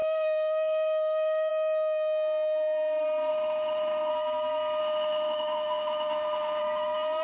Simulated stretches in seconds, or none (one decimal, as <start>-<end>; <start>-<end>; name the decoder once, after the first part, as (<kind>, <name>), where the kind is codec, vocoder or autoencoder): 0.0-1.5 (autoencoder, DAC-VAE); 3.3-4.1; 4.8-6.6